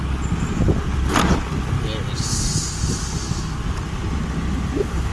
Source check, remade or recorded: recorded